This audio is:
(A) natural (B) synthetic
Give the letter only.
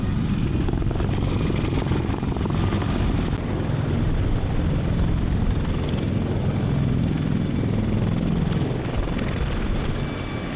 A